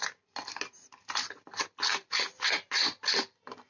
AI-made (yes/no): no